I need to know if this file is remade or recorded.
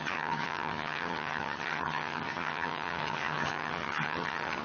remade